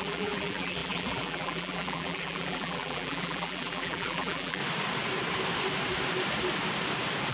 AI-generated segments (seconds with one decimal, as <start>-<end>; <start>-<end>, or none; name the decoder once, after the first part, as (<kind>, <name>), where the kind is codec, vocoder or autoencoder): 0.0-4.6 (vocoder, BigVGAN v2)